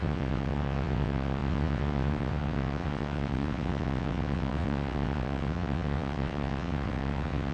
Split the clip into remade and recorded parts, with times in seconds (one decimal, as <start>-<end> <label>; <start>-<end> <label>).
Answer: 0.0-7.5 remade